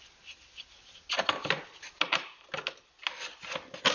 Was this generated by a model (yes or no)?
no